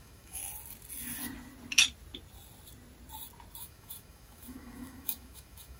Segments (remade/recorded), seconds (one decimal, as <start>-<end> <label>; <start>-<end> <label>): 0.0-0.4 remade; 0.4-3.6 recorded; 3.6-5.8 remade